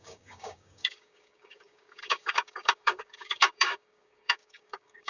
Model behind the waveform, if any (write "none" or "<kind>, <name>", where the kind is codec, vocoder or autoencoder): codec, DAC